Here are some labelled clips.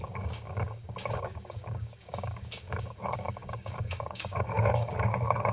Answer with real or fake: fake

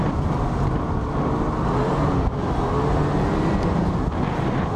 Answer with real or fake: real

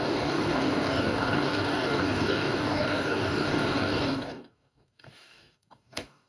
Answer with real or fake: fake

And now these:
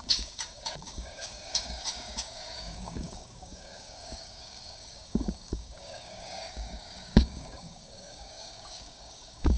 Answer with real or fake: fake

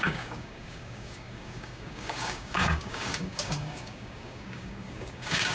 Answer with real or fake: fake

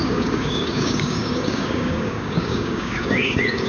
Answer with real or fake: fake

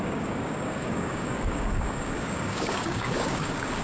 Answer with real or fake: fake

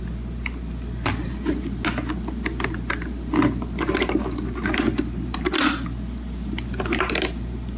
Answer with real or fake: real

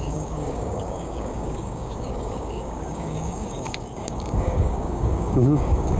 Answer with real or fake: fake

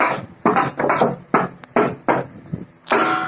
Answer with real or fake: real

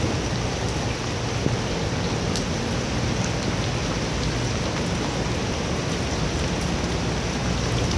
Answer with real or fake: real